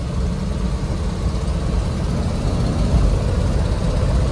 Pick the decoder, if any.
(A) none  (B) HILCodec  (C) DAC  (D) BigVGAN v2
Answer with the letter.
A